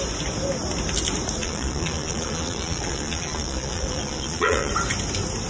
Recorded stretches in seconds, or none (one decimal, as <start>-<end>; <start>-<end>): 0.0-1.4; 4.7-5.5